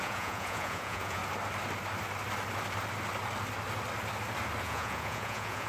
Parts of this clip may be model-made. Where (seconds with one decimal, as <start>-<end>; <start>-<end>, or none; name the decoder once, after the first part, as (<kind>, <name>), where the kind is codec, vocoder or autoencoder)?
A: 0.0-1.2 (vocoder, Vocos); 4.6-5.7